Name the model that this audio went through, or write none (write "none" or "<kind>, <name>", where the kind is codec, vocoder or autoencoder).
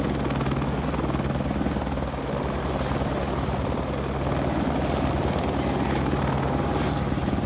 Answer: none